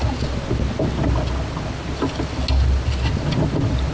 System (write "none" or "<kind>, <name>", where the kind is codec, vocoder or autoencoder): none